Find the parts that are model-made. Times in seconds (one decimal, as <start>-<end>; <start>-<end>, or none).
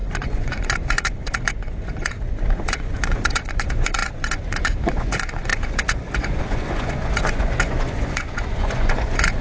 0.0-9.4